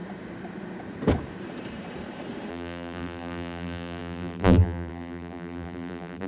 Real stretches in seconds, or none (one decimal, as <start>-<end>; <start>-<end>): 0.0-2.5